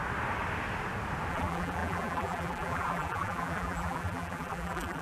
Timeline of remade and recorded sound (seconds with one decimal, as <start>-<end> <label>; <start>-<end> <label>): 0.0-1.3 recorded; 1.3-5.0 remade